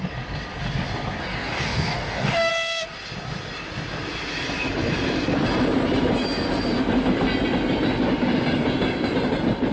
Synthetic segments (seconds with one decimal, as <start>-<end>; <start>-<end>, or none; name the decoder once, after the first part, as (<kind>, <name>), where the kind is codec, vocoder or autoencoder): 1.2-2.5 (codec, DAC)